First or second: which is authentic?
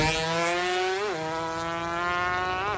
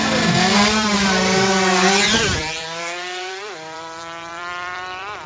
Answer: first